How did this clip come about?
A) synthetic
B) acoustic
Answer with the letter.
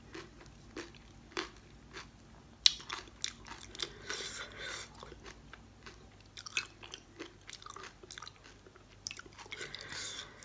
B